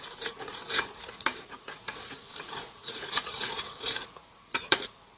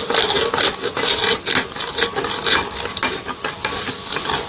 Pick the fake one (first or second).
first